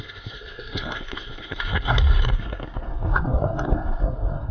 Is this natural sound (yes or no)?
no